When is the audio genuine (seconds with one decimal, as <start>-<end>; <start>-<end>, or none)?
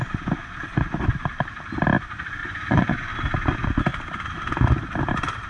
0.0-2.4; 3.1-5.5